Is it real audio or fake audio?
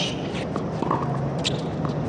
real